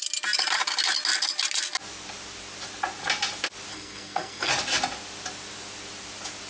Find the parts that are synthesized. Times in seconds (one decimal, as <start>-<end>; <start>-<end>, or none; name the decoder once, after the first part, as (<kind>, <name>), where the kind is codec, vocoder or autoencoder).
3.7-4.5 (codec, SNAC)